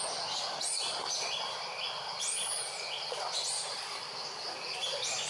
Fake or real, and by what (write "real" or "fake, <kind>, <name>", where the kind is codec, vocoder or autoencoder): real